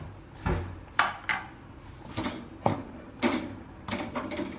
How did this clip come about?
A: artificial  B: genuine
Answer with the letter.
B